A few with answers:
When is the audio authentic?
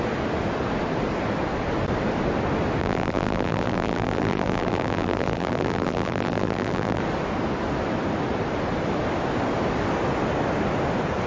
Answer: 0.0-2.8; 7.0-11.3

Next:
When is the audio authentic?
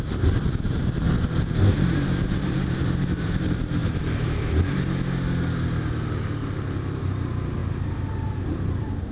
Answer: 3.8-7.0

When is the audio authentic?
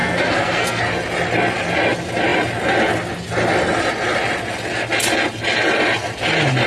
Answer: 0.8-6.7